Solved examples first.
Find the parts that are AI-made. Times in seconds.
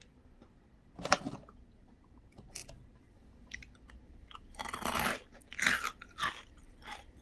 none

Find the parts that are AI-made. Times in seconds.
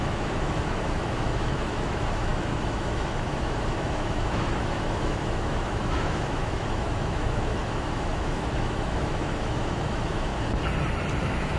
0.0-10.3 (autoencoder, DAC-VAE); 11.2-11.6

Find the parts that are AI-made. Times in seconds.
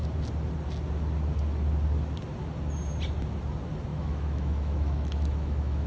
3.9-5.9 (autoencoder, DAC-VAE)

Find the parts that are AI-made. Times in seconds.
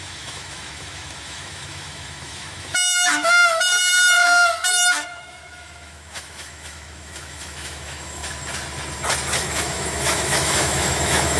0.0-3.7 (autoencoder, DAC-VAE); 4.7-8.2; 9.4-11.4